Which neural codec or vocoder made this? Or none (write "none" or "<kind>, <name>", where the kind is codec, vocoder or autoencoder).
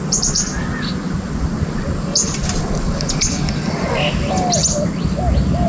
none